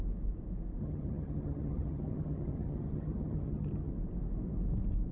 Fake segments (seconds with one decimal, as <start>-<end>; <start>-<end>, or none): 0.8-3.9